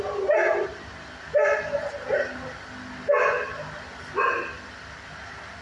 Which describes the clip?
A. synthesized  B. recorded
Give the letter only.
B